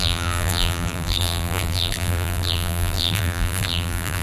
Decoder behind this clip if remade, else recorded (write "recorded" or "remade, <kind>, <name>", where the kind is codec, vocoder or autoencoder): remade, vocoder, BigVGAN v2